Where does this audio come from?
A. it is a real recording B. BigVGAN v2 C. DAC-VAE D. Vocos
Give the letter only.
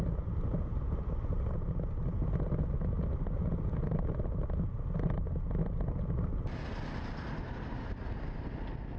A